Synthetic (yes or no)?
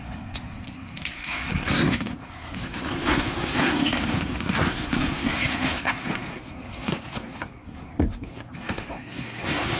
yes